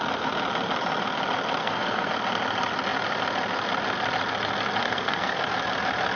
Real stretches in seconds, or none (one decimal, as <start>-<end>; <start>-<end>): 0.0-1.6; 2.1-4.8; 5.4-6.2